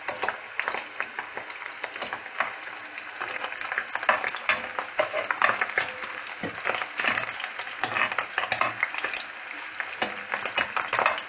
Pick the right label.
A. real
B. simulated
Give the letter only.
A